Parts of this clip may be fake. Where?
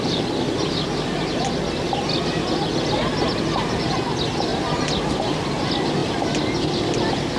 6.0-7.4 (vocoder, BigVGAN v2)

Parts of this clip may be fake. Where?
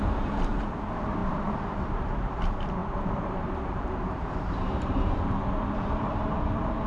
0.0-6.9 (vocoder, BigVGAN v2)